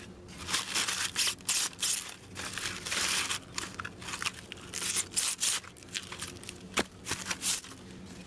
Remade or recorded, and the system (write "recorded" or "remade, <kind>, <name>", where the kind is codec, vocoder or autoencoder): recorded